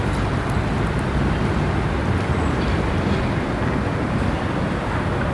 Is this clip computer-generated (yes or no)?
no